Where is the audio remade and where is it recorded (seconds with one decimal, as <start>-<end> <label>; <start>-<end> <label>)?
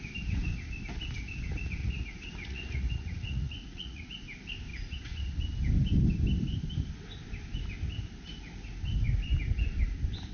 0.0-1.8 recorded; 1.8-4.1 remade; 4.1-4.7 recorded; 4.7-5.4 remade; 5.4-10.3 recorded